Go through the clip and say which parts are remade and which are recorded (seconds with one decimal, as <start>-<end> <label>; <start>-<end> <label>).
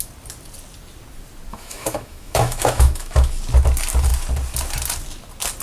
0.0-1.5 recorded; 1.5-3.3 remade; 3.3-5.6 recorded